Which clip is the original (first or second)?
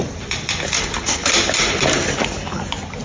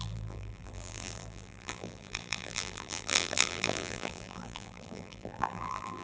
first